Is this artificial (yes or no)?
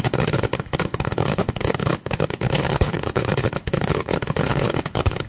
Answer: yes